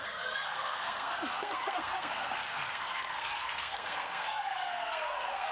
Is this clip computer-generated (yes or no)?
yes